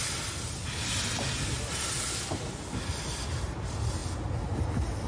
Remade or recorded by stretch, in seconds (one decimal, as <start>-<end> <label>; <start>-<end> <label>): 0.0-5.1 recorded